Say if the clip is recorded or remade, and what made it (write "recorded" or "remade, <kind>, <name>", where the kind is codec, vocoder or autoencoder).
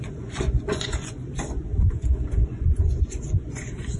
remade, vocoder, Vocos